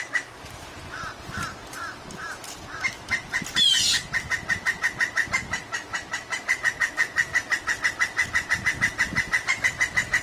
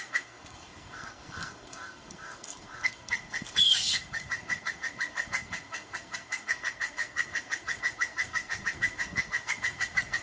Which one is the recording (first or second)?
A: first